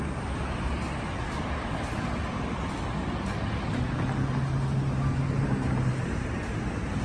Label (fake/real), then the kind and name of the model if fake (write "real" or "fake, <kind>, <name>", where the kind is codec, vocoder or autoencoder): real